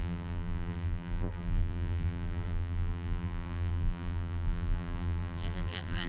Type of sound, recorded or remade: remade